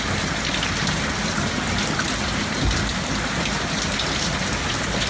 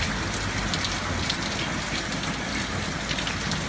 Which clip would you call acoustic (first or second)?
second